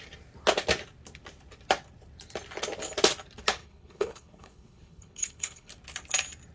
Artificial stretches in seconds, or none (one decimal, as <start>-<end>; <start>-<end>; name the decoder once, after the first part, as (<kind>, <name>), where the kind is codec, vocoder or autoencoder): 3.6-5.7 (codec, HILCodec)